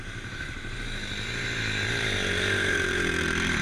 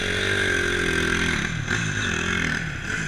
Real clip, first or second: second